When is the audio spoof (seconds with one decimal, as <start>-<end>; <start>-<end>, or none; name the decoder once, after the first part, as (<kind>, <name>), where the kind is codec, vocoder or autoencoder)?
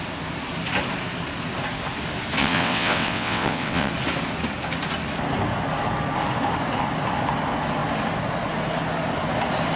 2.4-3.9 (vocoder, WaveNeXt)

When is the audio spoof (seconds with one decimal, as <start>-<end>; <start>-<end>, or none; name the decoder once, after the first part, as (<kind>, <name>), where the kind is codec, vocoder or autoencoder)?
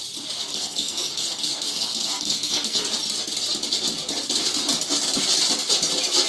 0.5-2.8 (codec, SNAC)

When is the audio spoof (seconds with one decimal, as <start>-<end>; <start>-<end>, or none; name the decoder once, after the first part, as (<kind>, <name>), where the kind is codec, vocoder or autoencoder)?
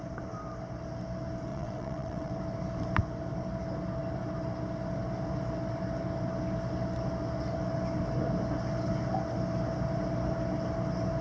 1.5-2.3 (vocoder, WaveNeXt)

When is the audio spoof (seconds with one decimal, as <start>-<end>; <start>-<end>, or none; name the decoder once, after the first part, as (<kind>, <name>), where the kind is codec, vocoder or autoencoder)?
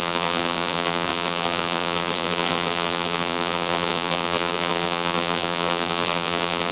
0.0-6.7 (vocoder, BigVGAN v2)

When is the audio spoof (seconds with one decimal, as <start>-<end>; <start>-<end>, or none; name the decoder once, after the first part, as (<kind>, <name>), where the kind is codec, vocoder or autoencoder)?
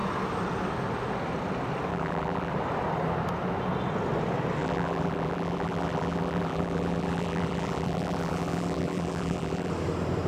1.9-2.5 (vocoder, BigVGAN v2); 4.6-9.7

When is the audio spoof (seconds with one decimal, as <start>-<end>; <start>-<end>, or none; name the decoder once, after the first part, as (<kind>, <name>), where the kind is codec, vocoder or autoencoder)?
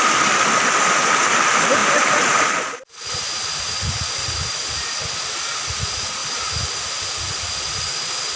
none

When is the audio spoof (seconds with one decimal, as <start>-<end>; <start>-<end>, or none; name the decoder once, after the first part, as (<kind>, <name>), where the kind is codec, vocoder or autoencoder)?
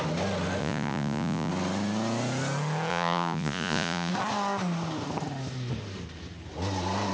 0.6-1.5 (vocoder, Vocos); 2.9-4.1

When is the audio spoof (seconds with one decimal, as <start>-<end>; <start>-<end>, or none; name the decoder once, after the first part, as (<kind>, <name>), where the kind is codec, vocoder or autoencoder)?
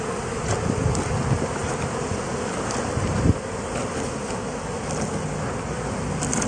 none